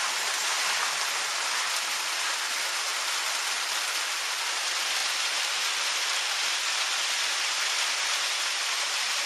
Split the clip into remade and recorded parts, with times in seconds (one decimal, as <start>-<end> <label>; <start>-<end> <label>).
0.0-9.3 recorded